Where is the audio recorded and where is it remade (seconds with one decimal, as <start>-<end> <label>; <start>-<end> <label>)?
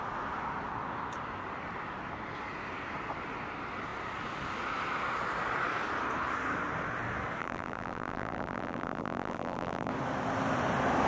0.0-7.4 recorded; 7.4-9.9 remade; 9.9-11.1 recorded